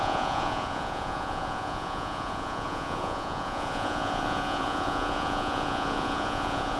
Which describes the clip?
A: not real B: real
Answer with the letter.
A